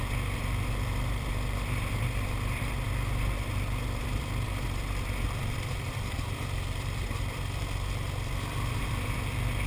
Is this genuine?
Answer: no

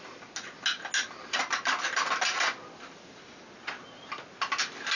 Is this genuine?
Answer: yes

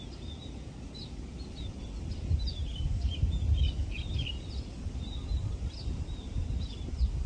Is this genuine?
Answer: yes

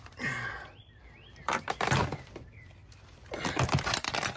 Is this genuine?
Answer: no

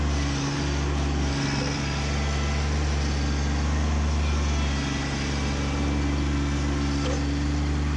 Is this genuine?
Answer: yes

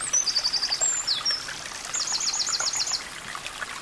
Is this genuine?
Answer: yes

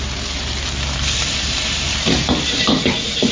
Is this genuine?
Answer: no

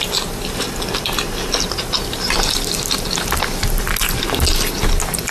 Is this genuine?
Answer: yes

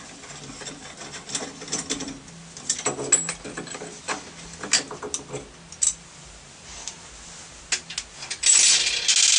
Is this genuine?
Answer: yes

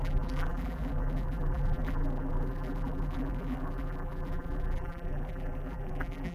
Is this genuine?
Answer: no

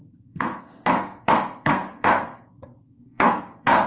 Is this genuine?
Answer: no